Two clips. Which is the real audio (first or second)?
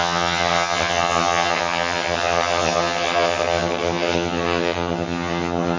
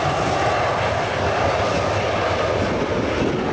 second